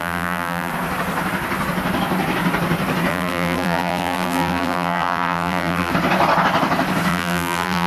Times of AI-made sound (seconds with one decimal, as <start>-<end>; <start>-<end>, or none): 0.0-0.7; 3.1-5.9; 7.1-7.9